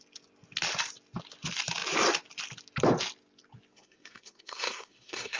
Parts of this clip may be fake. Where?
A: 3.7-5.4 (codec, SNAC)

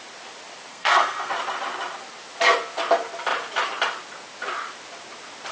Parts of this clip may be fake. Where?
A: 0.7-1.3 (codec, SNAC)

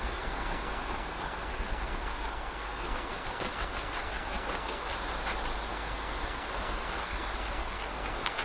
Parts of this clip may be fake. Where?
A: 0.0-4.9 (codec, SNAC); 5.7-8.4

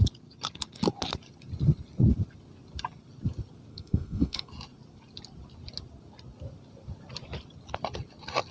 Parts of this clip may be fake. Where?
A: 3.7-4.5 (codec, SNAC)

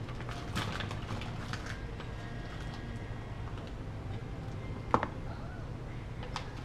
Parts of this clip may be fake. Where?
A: none

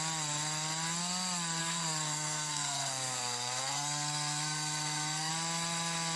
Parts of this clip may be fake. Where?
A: 1.6-5.3 (codec, SNAC)

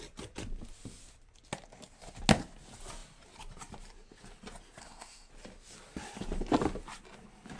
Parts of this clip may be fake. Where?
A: 4.8-5.3 (codec, SNAC)

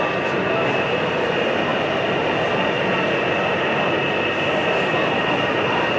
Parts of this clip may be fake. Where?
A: none